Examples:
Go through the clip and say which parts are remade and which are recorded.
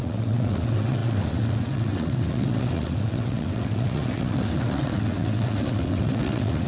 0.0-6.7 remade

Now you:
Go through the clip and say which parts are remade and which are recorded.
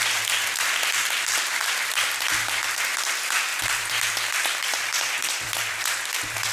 0.0-1.6 recorded; 1.6-2.3 remade; 2.3-3.5 recorded; 3.5-6.1 remade; 6.1-6.5 recorded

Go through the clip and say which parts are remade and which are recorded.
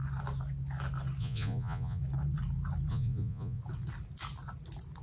0.0-1.2 recorded; 1.2-2.0 remade; 2.0-2.9 recorded; 2.9-3.6 remade; 3.6-5.0 recorded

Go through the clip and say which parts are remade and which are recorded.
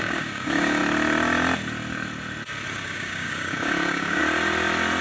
0.0-0.8 remade; 0.8-2.7 recorded; 2.7-4.2 remade; 4.2-5.0 recorded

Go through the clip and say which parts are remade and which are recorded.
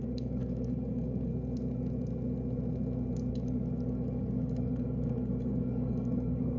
0.0-1.3 remade; 1.3-3.3 recorded; 3.3-6.6 remade